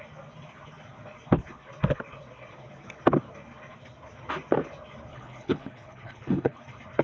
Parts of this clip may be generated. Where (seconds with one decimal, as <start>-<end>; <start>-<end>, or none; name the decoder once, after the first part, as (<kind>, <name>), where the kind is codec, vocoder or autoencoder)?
5.1-6.6 (codec, HILCodec)